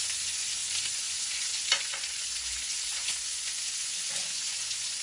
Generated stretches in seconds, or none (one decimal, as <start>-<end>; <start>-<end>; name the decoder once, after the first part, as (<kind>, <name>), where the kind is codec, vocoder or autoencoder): 0.0-5.0 (vocoder, Vocos)